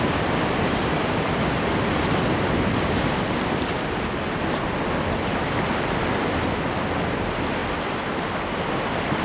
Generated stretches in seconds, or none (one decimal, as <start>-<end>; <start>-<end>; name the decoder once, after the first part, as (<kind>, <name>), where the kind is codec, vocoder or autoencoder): none